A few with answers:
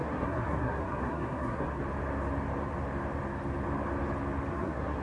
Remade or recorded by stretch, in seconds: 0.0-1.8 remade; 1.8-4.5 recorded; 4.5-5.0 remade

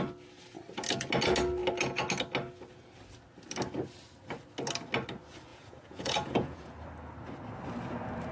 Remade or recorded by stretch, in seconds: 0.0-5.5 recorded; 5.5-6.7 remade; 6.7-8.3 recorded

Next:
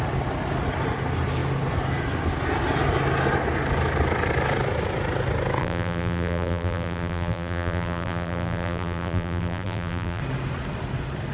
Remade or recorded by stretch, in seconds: 0.0-5.6 recorded; 5.6-10.2 remade; 10.2-11.3 recorded

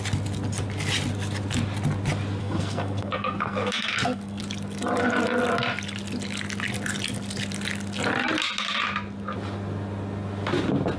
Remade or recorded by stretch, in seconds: 0.0-2.4 recorded; 2.4-4.4 remade; 4.4-11.0 recorded

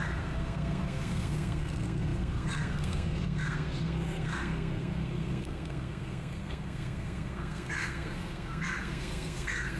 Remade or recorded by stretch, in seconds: 0.0-9.8 remade

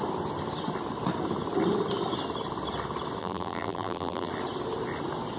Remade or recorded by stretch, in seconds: 0.0-3.2 recorded; 3.2-4.3 remade; 4.3-5.4 recorded

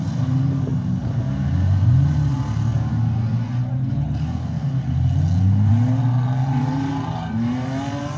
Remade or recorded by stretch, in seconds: 0.0-8.2 recorded